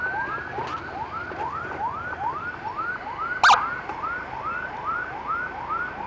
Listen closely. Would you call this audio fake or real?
real